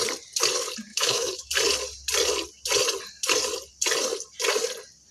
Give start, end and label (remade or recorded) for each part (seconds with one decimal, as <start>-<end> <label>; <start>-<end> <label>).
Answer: 0.0-0.9 recorded; 0.9-1.5 remade; 1.5-5.1 recorded